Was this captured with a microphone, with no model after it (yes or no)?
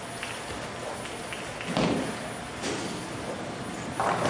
yes